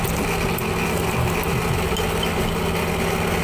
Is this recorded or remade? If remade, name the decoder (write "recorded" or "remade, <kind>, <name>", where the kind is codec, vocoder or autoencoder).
recorded